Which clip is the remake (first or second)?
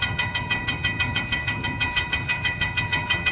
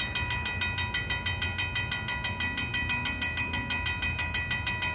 first